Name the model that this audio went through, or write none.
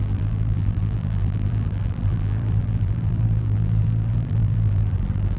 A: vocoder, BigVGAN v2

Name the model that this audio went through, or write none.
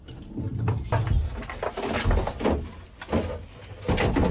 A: none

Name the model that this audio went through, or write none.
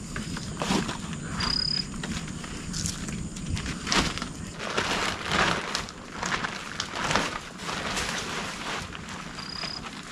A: none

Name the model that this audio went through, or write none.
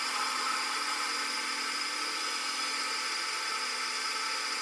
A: vocoder, BigVGAN v2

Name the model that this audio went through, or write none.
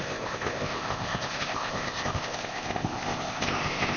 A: codec, ZipCodec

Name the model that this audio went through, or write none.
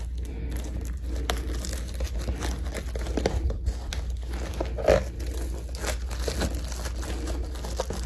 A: none